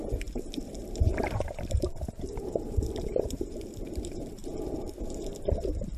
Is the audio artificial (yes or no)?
yes